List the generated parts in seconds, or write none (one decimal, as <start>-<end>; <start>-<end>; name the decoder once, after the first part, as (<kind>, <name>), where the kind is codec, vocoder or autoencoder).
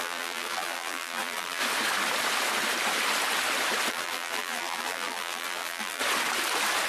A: 0.0-1.6 (vocoder, BigVGAN v2); 3.9-6.0